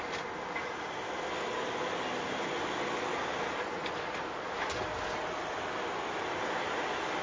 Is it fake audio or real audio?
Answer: real